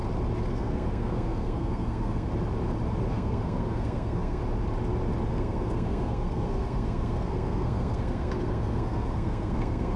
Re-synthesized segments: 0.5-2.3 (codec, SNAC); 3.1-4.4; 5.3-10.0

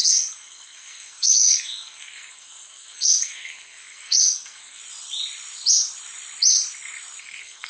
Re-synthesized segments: 0.0-4.8 (codec, SNAC); 7.2-7.7